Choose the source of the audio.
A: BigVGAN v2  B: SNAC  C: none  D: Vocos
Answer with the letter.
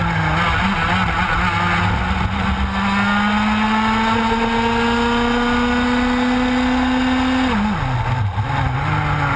C